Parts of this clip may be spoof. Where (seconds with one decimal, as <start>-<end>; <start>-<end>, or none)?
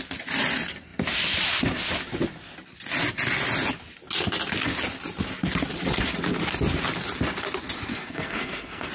7.9-8.9